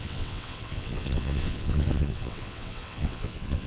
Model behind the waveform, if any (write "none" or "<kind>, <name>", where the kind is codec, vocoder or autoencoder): vocoder, WaveNeXt